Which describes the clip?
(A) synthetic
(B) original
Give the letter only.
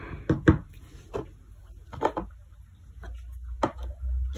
B